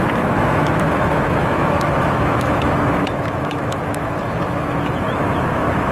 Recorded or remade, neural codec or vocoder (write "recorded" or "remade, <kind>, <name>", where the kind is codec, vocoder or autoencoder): remade, autoencoder, DAC-VAE